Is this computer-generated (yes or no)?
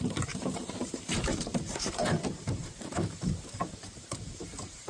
yes